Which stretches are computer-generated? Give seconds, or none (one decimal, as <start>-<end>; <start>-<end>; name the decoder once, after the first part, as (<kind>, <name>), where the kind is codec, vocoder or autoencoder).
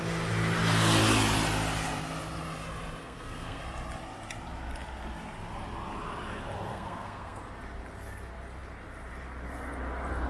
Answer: 3.0-3.6 (codec, SNAC); 6.7-7.4